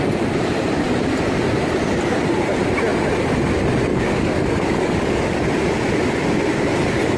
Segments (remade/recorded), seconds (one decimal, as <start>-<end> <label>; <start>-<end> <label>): 0.0-3.9 recorded; 3.9-5.3 remade; 5.3-7.2 recorded